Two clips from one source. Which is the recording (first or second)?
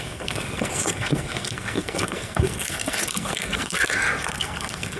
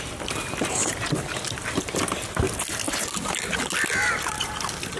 second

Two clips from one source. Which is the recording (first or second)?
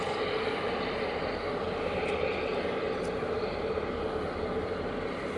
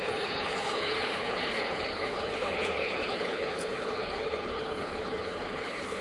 first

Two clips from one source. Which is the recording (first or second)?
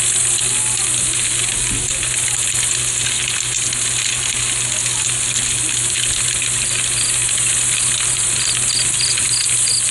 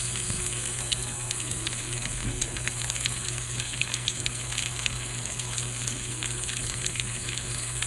first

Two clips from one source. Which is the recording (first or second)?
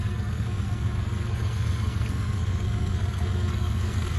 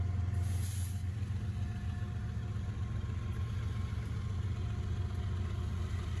second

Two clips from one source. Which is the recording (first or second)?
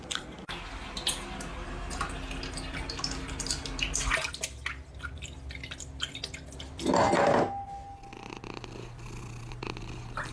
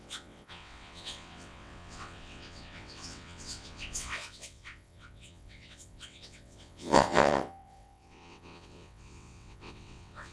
first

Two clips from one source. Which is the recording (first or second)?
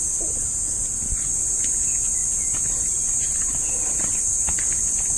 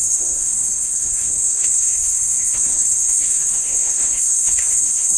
first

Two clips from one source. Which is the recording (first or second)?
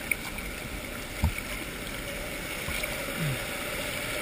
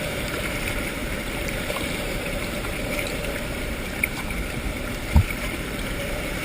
first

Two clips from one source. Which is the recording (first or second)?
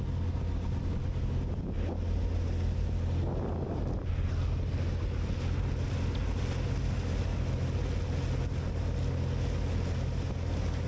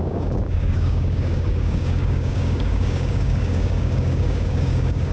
first